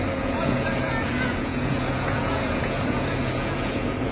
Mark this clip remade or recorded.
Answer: remade